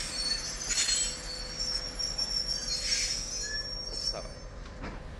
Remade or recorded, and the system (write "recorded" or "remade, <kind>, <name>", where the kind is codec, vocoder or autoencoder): recorded